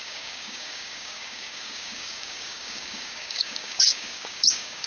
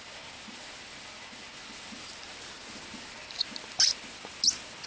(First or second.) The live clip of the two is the second